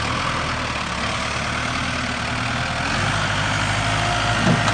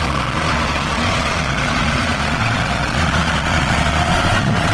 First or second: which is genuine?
first